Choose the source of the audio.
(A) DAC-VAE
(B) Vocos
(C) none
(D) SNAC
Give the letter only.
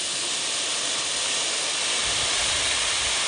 C